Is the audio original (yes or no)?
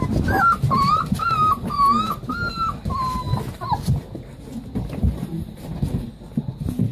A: yes